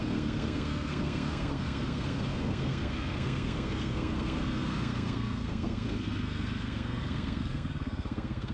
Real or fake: fake